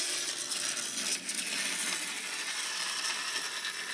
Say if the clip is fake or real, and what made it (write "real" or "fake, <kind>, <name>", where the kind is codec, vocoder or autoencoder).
real